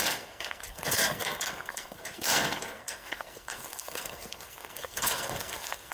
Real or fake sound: fake